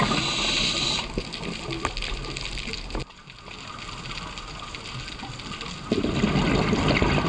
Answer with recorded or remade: recorded